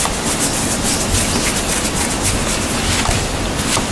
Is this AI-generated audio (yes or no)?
no